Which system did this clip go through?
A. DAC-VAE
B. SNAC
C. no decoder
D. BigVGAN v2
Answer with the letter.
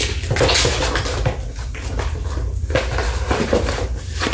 C